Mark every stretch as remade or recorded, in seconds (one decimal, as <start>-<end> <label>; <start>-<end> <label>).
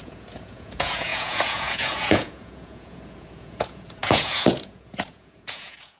0.0-6.0 remade